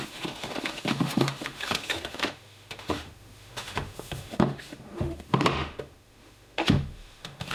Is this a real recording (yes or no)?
no